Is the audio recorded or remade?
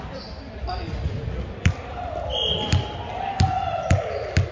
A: recorded